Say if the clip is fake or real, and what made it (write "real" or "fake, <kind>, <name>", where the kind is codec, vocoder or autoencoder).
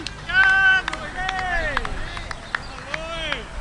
real